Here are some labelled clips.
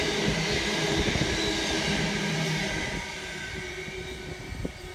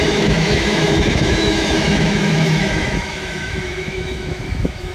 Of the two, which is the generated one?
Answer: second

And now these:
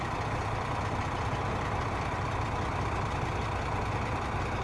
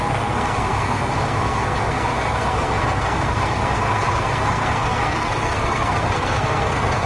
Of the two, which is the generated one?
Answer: second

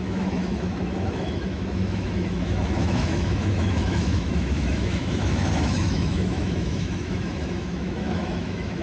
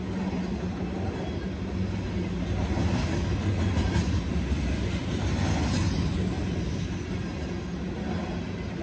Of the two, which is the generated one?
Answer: first